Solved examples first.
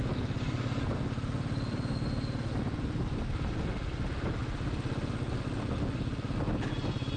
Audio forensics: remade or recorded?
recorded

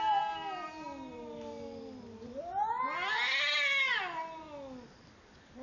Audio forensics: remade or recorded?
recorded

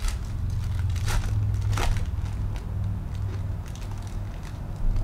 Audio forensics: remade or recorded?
recorded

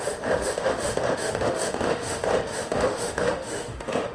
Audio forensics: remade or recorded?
remade